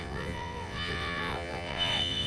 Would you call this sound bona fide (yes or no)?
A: no